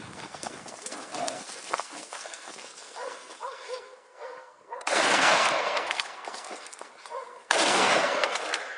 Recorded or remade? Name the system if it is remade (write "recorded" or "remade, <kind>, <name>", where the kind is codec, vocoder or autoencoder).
remade, codec, SNAC